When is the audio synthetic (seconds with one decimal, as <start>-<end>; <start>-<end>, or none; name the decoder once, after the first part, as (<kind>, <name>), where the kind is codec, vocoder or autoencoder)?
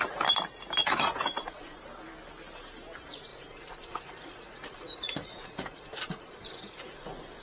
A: 0.8-1.8 (vocoder, Vocos); 3.3-7.4